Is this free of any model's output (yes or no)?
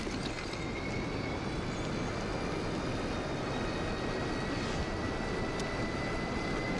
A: yes